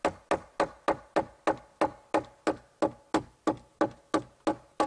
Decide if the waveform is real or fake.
real